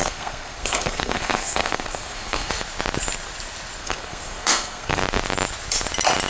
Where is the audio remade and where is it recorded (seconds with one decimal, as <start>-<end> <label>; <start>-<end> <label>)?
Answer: 0.0-2.5 remade; 2.5-3.8 recorded; 3.8-5.0 remade; 5.0-6.3 recorded